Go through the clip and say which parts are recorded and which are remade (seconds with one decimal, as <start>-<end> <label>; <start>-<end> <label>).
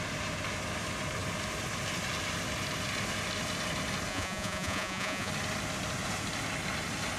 0.0-4.1 recorded; 4.1-5.3 remade; 5.3-7.2 recorded